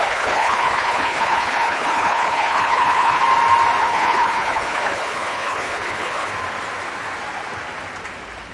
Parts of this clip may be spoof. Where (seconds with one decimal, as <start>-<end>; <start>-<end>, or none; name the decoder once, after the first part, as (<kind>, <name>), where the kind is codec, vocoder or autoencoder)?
0.0-3.2 (codec, HILCodec); 3.8-6.3